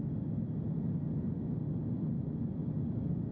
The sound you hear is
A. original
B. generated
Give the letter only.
A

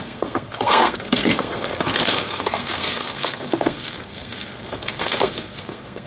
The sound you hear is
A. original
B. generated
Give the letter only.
B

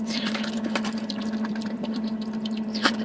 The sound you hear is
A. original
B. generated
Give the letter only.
B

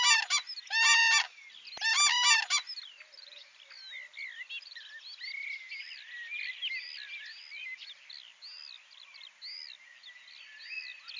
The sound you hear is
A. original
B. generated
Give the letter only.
A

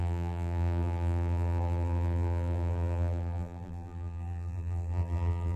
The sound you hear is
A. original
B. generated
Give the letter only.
B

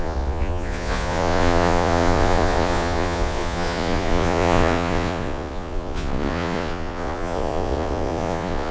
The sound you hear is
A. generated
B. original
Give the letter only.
A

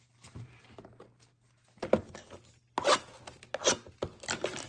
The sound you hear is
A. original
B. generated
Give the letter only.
A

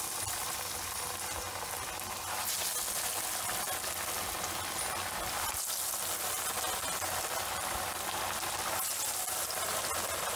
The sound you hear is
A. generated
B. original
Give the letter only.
B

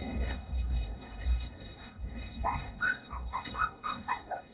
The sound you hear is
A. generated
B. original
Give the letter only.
A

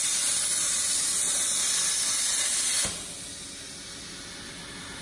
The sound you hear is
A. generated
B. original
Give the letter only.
B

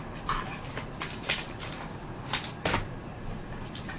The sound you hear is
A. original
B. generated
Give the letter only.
A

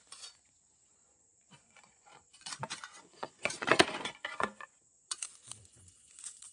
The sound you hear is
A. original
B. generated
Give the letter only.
B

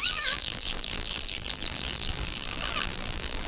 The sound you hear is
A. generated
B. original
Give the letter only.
A